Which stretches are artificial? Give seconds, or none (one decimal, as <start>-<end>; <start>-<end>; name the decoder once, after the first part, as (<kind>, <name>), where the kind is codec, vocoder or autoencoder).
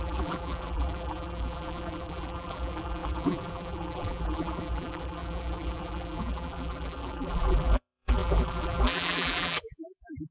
0.0-10.3 (vocoder, BigVGAN v2)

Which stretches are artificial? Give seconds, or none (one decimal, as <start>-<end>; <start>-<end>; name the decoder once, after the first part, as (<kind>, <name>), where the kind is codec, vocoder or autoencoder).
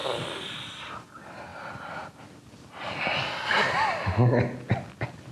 none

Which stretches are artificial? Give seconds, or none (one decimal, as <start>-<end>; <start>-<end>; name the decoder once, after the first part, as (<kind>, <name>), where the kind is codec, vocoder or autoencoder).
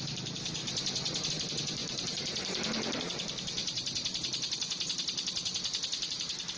0.0-0.6 (vocoder, BigVGAN v2); 1.3-3.6; 6.1-6.6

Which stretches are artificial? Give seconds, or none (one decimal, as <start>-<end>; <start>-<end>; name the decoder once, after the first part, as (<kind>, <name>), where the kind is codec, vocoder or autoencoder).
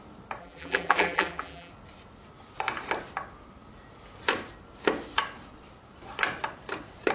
0.4-1.7 (vocoder, BigVGAN v2)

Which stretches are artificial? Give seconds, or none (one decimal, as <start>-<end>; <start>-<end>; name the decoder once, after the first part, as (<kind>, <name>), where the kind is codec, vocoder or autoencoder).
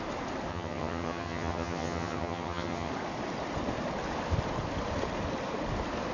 0.5-2.9 (vocoder, HiFi-GAN)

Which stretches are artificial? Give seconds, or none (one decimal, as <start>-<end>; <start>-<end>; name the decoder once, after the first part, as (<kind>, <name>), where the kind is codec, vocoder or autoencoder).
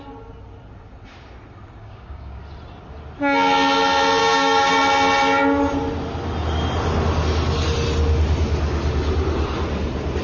1.8-2.4 (codec, DAC); 4.2-4.7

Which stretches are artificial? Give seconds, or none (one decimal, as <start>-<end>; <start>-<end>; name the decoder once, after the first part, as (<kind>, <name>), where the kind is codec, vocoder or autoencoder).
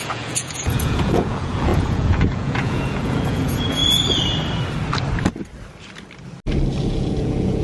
0.0-3.8 (vocoder, Vocos); 6.8-7.6